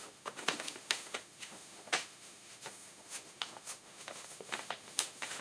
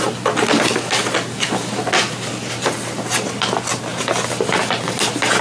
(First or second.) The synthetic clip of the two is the first